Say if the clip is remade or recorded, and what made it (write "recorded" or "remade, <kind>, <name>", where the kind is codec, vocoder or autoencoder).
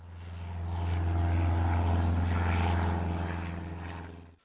recorded